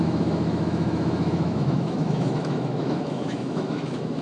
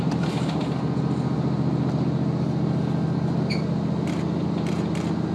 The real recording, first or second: second